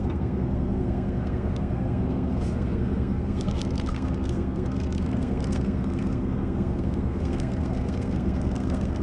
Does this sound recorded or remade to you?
remade